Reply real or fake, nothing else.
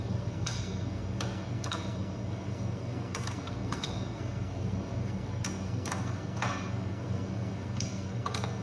fake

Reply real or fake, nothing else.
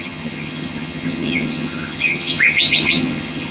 fake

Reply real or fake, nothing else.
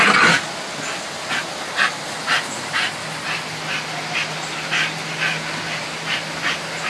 real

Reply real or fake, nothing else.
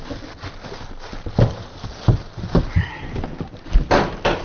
real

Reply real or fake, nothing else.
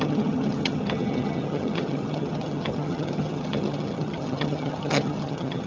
fake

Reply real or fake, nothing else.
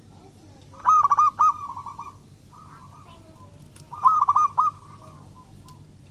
real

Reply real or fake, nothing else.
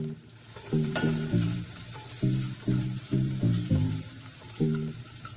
fake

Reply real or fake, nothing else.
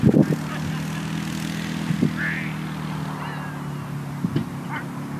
real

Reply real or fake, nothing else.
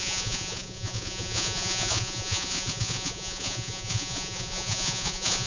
fake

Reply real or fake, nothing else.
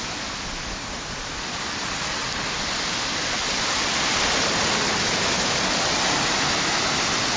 real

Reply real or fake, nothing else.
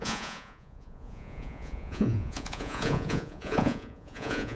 fake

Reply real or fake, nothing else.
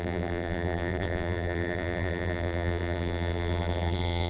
fake